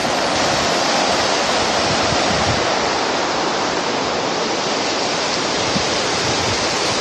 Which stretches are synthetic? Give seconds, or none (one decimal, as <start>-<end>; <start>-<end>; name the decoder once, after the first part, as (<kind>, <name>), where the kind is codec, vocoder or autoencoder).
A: none